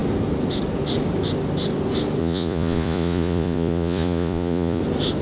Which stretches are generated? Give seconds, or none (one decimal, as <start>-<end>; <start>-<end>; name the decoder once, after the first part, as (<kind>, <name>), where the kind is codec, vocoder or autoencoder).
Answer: 2.2-4.8 (vocoder, Vocos)